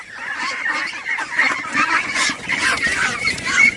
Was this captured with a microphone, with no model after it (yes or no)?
no